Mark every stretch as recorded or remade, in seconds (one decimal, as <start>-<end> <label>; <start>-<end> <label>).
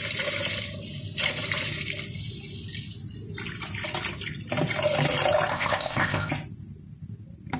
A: 0.0-5.5 recorded; 5.5-6.3 remade; 6.3-7.6 recorded